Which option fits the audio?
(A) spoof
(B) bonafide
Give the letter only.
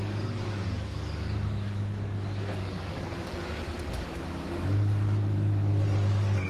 A